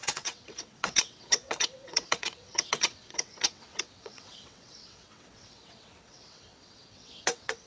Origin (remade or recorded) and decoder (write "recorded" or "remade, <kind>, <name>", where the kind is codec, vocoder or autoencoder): remade, vocoder, WaveNeXt